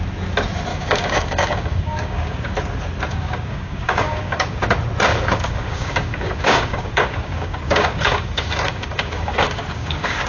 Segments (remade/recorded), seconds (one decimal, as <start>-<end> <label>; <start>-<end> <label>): 0.0-0.7 recorded; 0.7-2.6 remade; 2.6-3.1 recorded; 3.1-4.6 remade; 4.6-5.1 recorded; 5.1-10.3 remade